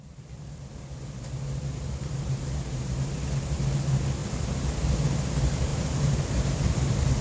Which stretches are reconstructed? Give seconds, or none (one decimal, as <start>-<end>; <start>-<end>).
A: 5.7-6.7